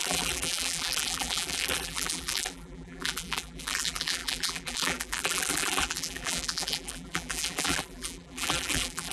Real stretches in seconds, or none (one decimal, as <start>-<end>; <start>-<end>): none